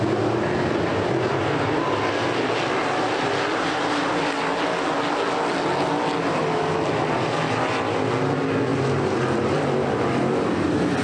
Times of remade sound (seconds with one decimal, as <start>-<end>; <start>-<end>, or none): none